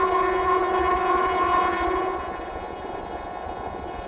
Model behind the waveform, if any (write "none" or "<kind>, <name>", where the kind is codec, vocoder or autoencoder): vocoder, Vocos